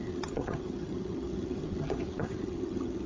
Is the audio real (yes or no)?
no